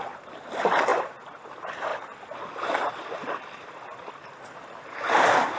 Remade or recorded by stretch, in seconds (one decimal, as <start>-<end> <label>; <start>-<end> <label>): 0.0-5.6 recorded